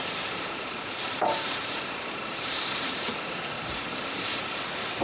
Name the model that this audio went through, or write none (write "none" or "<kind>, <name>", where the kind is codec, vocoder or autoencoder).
vocoder, BigVGAN v2